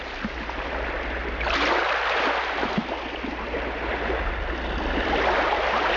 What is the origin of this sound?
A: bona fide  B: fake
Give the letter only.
B